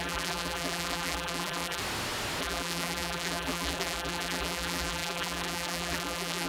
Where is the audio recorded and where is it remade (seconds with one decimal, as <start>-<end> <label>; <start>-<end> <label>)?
0.0-1.8 remade; 1.8-2.4 recorded; 2.4-6.5 remade